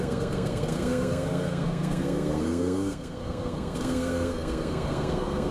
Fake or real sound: fake